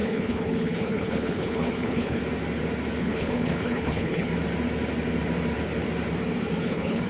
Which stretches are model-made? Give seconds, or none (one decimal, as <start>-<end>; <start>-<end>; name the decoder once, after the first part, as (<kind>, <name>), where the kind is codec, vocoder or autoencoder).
0.0-2.2 (codec, HILCodec); 3.0-4.3; 6.6-7.1

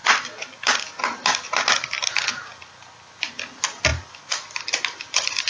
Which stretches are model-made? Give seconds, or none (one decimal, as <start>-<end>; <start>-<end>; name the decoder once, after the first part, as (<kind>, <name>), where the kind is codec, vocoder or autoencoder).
0.0-3.3 (vocoder, BigVGAN v2); 3.9-5.5